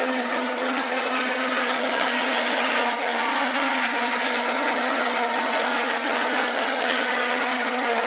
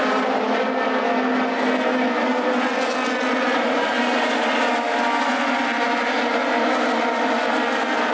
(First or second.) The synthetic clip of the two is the first